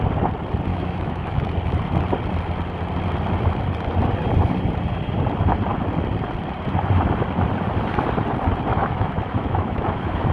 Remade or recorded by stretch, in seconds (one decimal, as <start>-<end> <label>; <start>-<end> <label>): 0.0-0.7 recorded; 0.7-1.4 remade; 1.4-8.7 recorded; 8.7-10.3 remade